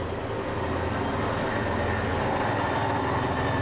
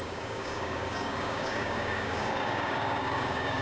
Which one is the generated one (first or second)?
second